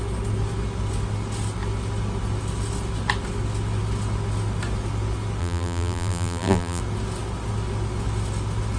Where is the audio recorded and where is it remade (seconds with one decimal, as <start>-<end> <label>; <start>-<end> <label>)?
0.0-5.4 recorded; 5.4-6.8 remade; 6.8-8.8 recorded